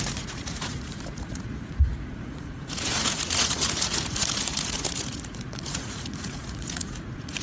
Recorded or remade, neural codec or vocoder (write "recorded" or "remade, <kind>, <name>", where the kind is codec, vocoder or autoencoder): remade, vocoder, Vocos